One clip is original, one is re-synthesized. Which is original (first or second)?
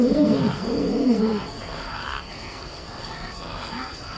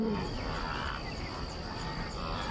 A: second